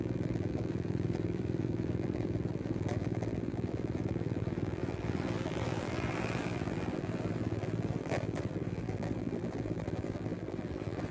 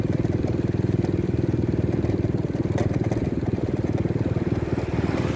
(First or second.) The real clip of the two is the second